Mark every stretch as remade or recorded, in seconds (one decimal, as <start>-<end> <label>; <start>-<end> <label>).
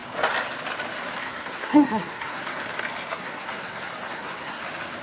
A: 0.0-1.2 recorded; 1.2-2.6 remade; 2.6-3.1 recorded; 3.1-4.6 remade; 4.6-5.0 recorded